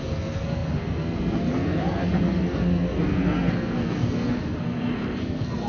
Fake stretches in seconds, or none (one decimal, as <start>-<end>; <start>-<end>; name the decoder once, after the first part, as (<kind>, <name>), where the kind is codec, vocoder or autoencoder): 0.0-5.7 (codec, SNAC)